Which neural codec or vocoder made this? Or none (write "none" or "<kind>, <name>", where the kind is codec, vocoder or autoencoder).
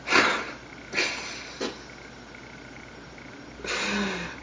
none